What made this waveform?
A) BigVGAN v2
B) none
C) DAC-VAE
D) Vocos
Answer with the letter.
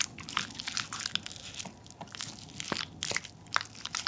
B